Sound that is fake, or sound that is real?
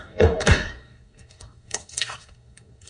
fake